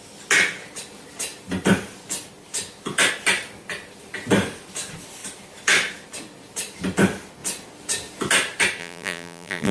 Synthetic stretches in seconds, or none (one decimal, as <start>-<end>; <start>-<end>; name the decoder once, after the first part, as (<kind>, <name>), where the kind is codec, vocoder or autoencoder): 8.8-9.7 (vocoder, BigVGAN v2)